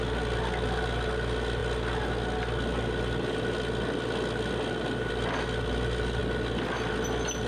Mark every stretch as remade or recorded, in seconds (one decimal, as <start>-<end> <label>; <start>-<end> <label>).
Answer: 0.0-7.5 recorded